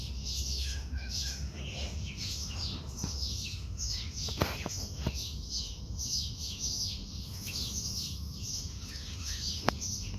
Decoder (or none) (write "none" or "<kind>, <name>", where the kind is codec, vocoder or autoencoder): autoencoder, DAC-VAE